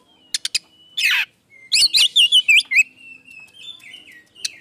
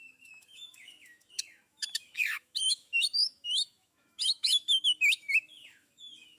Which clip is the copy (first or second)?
second